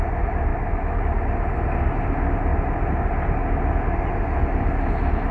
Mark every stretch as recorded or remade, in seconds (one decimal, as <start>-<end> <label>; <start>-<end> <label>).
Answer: 0.0-0.5 recorded; 0.5-1.0 remade; 1.0-5.3 recorded